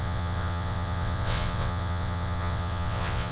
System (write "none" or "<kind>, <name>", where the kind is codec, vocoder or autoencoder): vocoder, WaveNeXt